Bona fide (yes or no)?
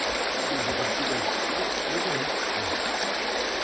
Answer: yes